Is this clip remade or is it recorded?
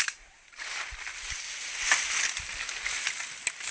recorded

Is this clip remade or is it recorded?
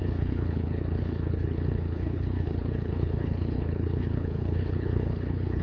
remade